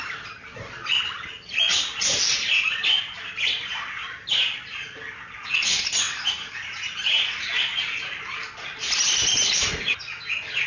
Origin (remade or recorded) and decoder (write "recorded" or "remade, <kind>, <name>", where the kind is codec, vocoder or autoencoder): recorded